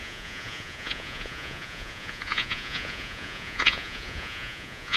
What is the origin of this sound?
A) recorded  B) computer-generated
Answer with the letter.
B